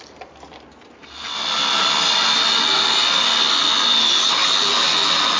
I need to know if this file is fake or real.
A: real